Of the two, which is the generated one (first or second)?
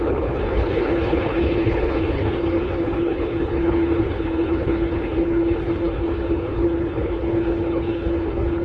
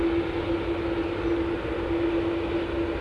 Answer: first